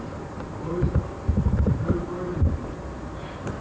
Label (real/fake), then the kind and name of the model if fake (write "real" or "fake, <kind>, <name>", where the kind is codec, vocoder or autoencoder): fake, vocoder, BigVGAN v2